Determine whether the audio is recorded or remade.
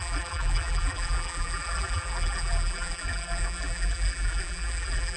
remade